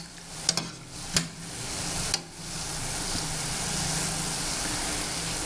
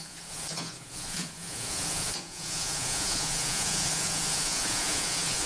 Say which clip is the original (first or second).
first